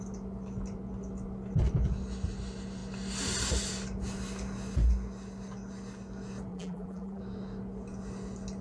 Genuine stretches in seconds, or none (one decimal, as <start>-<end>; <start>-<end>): 0.0-6.5; 7.2-8.6